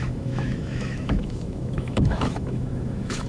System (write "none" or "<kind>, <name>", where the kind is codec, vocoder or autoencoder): autoencoder, DAC-VAE